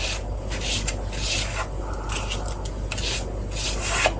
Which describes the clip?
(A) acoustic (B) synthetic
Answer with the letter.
A